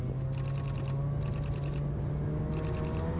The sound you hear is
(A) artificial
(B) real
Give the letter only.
B